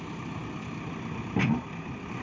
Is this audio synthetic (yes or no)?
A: no